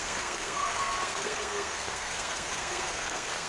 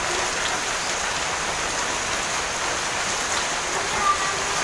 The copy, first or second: first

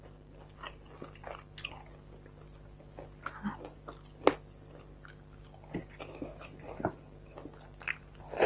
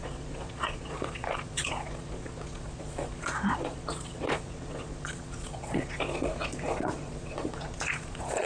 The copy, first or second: second